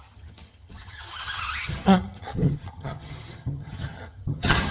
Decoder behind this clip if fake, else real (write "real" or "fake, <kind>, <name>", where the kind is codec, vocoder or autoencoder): fake, vocoder, HiFi-GAN